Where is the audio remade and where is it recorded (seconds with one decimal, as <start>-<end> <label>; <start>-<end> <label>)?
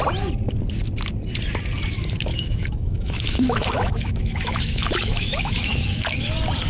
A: 0.0-2.3 recorded; 2.3-6.3 remade; 6.3-6.7 recorded